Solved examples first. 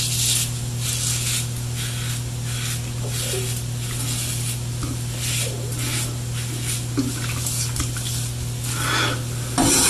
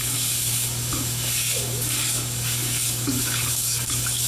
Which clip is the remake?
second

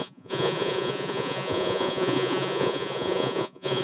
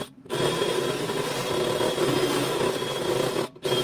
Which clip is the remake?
first